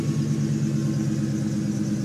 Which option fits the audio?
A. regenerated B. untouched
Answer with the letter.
B